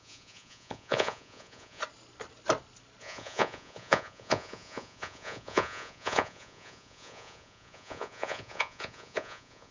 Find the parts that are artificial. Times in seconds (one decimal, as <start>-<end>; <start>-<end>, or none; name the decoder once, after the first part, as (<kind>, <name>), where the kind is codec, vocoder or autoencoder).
0.0-1.8 (vocoder, Vocos); 3.0-9.7